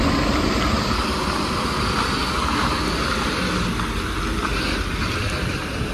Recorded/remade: recorded